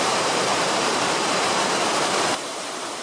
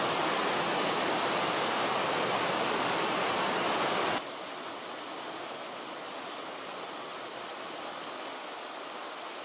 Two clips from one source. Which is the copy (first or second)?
first